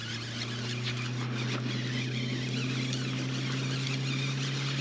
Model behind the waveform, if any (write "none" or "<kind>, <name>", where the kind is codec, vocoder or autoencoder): none